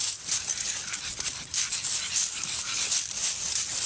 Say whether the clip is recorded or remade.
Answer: recorded